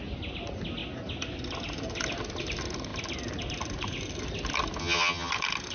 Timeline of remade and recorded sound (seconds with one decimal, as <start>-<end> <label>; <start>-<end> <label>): 0.0-4.8 recorded; 4.8-5.3 remade; 5.3-5.7 recorded